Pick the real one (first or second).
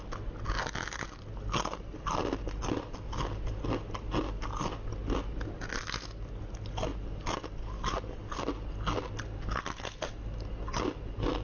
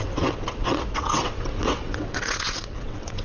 first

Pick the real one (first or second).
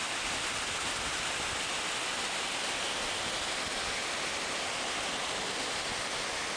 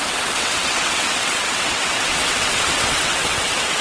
first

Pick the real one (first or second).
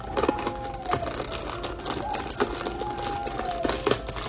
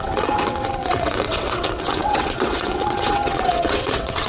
first